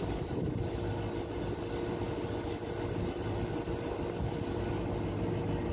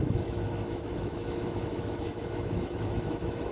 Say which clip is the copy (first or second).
second